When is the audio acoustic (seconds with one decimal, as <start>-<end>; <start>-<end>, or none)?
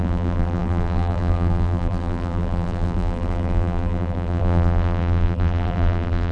none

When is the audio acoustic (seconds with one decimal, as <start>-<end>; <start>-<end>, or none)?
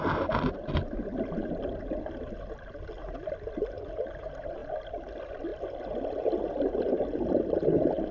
0.0-8.1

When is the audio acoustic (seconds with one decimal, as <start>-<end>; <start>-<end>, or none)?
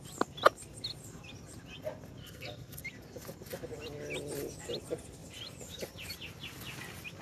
0.0-2.2; 2.8-7.2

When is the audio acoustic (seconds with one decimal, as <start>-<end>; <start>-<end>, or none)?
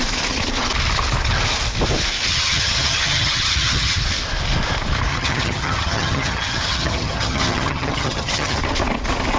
0.0-2.2; 4.0-5.1; 8.6-9.4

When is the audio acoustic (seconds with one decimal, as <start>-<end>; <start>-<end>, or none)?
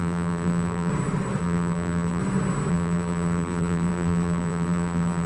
0.9-1.4; 2.2-2.7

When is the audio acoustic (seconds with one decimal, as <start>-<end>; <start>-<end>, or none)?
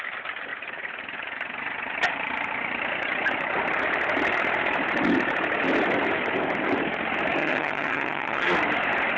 0.0-7.4; 8.5-9.2